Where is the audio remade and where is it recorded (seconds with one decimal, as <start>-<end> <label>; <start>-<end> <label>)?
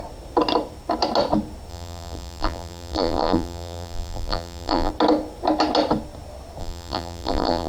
0.0-1.7 recorded; 1.7-4.9 remade; 4.9-6.6 recorded; 6.6-7.7 remade